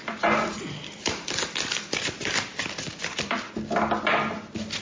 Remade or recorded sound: recorded